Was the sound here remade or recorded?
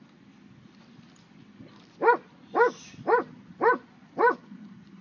recorded